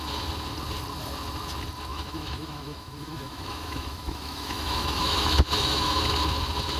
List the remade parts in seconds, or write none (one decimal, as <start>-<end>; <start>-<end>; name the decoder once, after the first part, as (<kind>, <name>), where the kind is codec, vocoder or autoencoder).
1.9-6.0 (autoencoder, DAC-VAE)

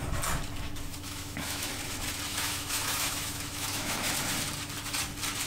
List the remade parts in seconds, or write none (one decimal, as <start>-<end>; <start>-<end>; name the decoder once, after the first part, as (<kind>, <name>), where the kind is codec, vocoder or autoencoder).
0.9-1.7 (autoencoder, DAC-VAE); 2.3-4.1